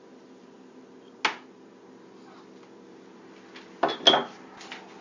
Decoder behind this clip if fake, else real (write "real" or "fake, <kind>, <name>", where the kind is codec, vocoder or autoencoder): real